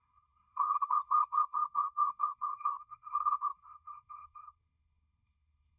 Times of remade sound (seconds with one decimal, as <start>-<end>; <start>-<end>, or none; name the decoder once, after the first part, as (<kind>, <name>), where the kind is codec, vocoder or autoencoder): 0.0-5.8 (codec, SNAC)